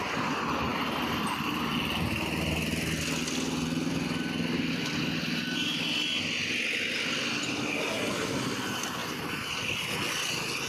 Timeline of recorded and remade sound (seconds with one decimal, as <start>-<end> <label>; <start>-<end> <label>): 0.0-10.7 recorded